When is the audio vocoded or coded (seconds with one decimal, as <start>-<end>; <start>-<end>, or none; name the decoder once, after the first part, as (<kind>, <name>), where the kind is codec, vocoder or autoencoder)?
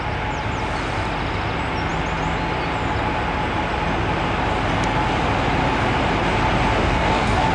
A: 6.7-7.5 (codec, DAC)